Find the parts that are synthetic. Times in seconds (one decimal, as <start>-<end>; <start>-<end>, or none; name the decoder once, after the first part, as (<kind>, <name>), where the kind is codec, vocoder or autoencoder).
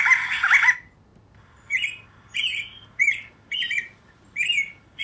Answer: none